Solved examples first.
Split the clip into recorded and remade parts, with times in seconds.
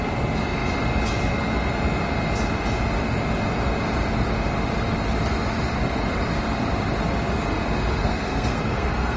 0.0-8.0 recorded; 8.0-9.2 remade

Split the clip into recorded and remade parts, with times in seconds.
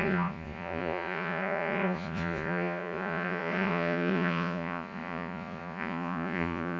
0.0-6.8 remade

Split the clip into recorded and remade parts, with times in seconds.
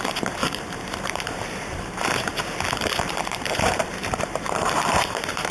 0.0-2.3 remade; 2.3-3.1 recorded; 3.1-5.5 remade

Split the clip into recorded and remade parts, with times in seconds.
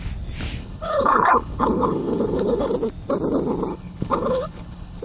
0.0-0.6 recorded; 0.6-2.7 remade; 2.7-3.7 recorded; 3.7-5.0 remade